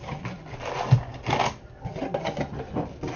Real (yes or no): yes